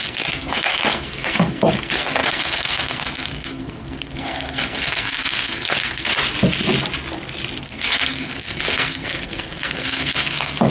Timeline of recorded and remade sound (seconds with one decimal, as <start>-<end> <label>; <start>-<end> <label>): 0.0-6.1 remade; 6.1-7.6 recorded; 7.6-10.7 remade